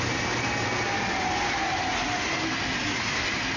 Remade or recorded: recorded